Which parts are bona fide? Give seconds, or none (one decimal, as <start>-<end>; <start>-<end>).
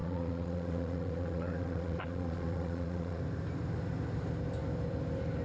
3.2-5.4